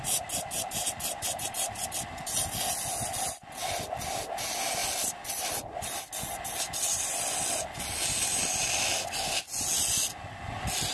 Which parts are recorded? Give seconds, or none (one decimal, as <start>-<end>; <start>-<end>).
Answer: 0.0-10.9